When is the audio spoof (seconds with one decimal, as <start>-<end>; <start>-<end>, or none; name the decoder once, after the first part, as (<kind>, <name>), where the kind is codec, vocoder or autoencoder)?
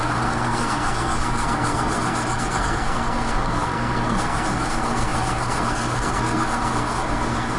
0.0-7.6 (codec, SNAC)